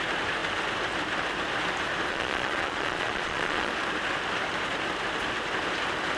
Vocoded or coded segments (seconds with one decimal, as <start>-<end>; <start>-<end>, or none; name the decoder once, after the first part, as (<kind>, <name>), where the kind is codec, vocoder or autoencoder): 2.1-3.7 (vocoder, Vocos)